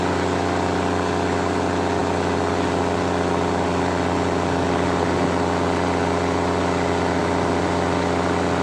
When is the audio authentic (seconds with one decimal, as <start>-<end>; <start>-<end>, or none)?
0.0-8.6